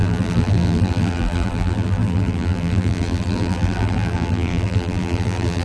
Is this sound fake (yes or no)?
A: yes